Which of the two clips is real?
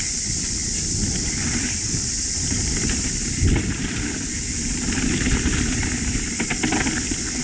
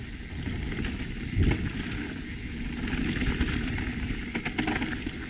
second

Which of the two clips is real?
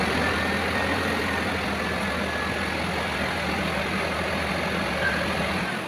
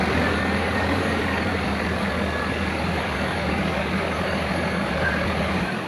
first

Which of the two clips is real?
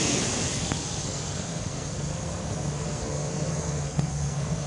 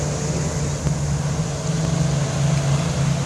second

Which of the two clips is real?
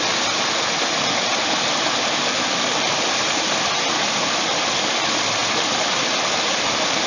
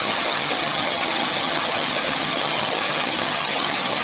first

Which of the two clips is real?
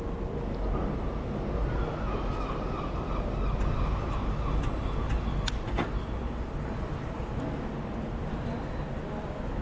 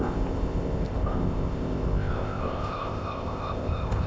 first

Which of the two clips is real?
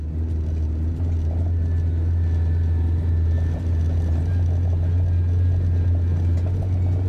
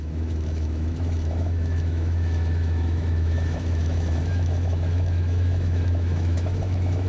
first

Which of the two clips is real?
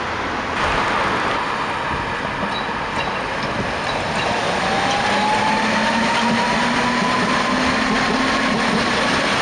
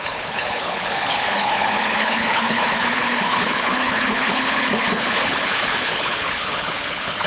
first